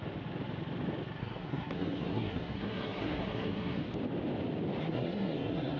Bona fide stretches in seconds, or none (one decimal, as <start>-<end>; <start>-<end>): 0.0-1.2; 3.8-4.8